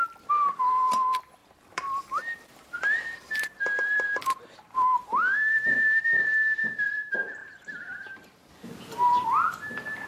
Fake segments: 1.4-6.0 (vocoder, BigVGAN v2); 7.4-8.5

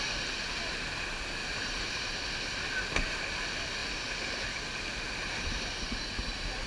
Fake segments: 1.4-1.9 (vocoder, BigVGAN v2)

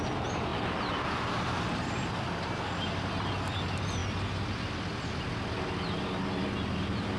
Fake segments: none

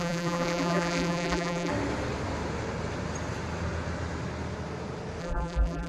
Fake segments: 0.0-1.7 (vocoder, BigVGAN v2); 5.2-5.9